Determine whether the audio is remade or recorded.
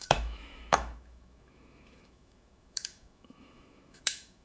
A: remade